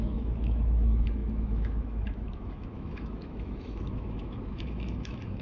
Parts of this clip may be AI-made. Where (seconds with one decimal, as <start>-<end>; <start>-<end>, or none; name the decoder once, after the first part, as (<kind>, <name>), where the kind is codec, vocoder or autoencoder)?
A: 0.0-5.4 (autoencoder, DAC-VAE)